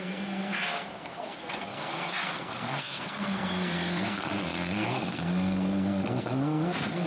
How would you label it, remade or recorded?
remade